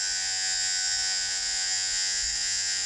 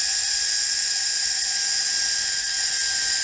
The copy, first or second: first